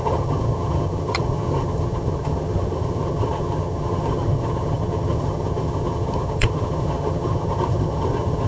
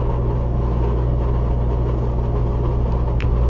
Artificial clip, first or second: first